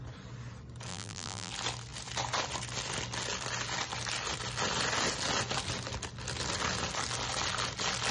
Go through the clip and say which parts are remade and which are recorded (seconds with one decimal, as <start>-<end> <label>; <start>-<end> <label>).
0.0-0.9 recorded; 0.9-1.5 remade; 1.5-8.1 recorded